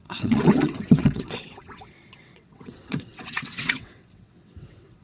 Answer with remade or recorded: remade